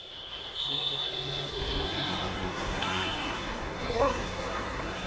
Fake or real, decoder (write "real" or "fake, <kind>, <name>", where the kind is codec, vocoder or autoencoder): fake, codec, SNAC